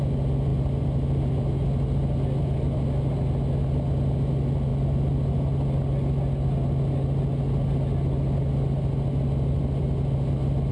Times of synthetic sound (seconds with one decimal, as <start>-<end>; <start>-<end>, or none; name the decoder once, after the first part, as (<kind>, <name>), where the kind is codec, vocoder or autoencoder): none